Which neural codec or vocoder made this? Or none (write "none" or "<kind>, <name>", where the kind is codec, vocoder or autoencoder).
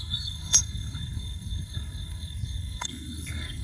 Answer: codec, SNAC